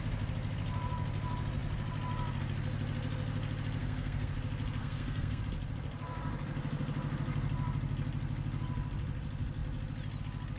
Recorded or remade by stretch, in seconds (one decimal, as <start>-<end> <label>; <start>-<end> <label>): 0.0-3.8 recorded; 3.8-4.3 remade; 4.3-4.8 recorded; 4.8-5.4 remade; 5.4-10.6 recorded